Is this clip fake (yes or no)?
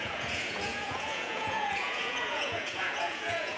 yes